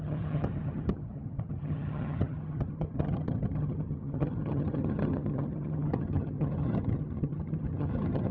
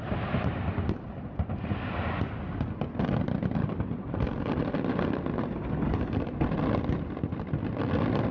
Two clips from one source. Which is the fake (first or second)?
first